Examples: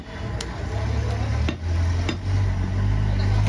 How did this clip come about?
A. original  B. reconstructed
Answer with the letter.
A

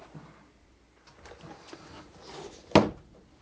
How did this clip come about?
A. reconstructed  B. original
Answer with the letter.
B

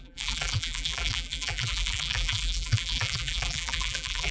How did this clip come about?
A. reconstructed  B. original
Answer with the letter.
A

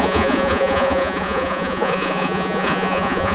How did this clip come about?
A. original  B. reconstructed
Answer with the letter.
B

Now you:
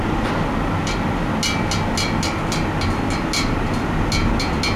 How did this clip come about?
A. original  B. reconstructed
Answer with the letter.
A